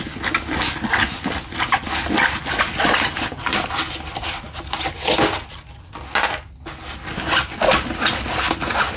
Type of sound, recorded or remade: recorded